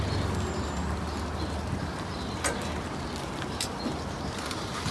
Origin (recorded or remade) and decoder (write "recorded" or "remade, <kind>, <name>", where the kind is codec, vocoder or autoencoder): recorded